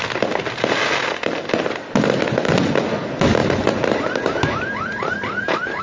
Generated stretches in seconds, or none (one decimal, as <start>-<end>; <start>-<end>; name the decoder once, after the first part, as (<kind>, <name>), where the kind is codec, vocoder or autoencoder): 3.4-5.8 (vocoder, BigVGAN v2)